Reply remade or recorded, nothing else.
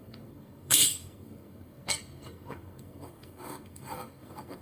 remade